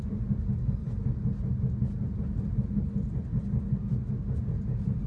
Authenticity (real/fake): real